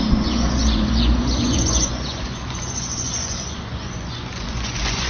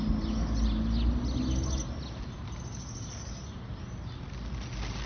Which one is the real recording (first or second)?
second